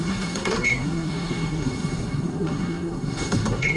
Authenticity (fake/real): fake